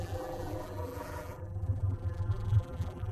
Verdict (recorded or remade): remade